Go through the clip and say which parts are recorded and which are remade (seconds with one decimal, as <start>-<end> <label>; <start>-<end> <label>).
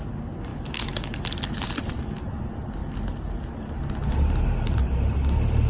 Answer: 0.0-5.7 recorded